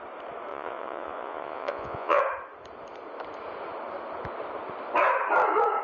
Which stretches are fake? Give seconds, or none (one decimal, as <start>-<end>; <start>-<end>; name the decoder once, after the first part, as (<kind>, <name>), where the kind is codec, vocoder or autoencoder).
0.5-2.2 (vocoder, Vocos)